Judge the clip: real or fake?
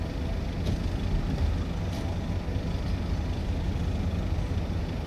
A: real